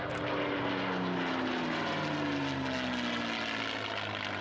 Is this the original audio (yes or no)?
yes